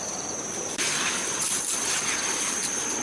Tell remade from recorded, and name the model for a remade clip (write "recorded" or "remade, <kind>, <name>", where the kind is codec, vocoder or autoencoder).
recorded